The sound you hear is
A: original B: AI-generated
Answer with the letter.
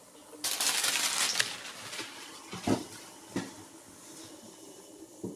A